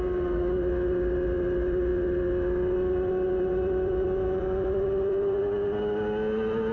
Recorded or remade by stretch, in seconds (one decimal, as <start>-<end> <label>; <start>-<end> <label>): 0.0-3.5 recorded; 3.5-5.4 remade; 5.4-6.7 recorded